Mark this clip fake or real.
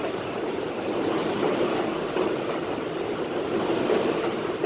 fake